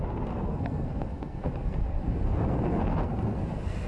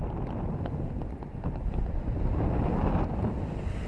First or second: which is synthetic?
first